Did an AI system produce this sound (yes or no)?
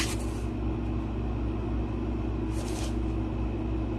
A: no